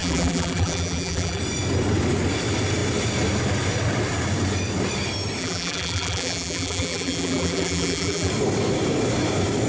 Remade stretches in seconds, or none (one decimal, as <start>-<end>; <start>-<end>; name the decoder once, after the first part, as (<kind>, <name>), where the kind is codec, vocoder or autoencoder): 0.0-1.4 (vocoder, BigVGAN v2); 5.4-8.3